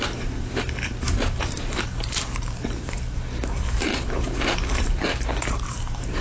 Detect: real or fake fake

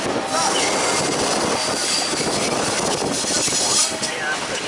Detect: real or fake real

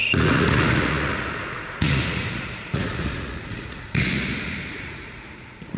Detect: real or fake fake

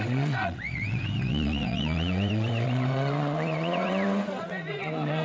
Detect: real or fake fake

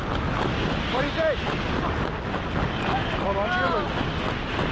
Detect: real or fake real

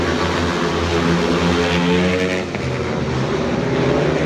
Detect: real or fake real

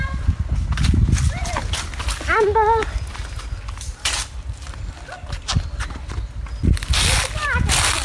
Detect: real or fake real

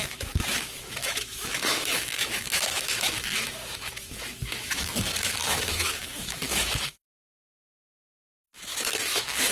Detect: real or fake fake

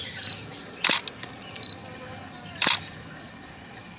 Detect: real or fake real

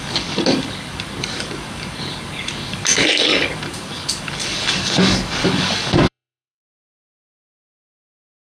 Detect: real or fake fake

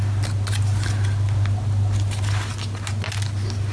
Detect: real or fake real